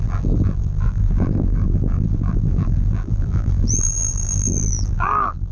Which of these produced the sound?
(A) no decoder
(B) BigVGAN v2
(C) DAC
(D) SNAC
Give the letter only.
B